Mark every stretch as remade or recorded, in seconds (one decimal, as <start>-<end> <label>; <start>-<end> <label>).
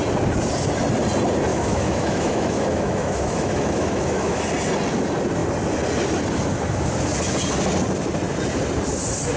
0.0-1.5 recorded; 1.5-4.4 remade; 4.4-9.4 recorded